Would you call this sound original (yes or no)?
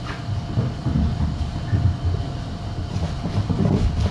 yes